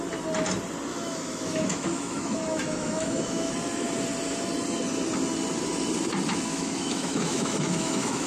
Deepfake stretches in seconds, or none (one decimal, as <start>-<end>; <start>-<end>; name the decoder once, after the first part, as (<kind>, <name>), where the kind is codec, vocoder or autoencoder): 0.9-3.5 (autoencoder, DAC-VAE); 6.5-8.3